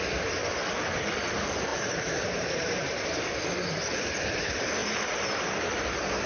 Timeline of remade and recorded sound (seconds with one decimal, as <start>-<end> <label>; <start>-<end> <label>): 0.0-1.7 recorded; 1.7-3.4 remade; 3.4-6.3 recorded